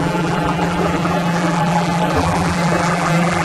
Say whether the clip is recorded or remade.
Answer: remade